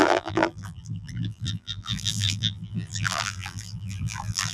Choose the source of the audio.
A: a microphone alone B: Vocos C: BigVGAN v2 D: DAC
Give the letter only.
C